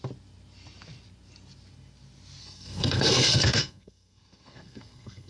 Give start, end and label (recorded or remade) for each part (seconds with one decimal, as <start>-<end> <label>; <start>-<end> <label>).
0.0-2.4 recorded; 2.4-5.3 remade